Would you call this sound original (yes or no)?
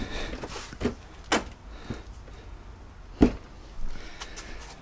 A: yes